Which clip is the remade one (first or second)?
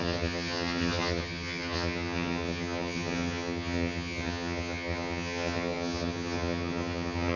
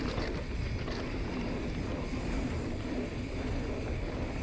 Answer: first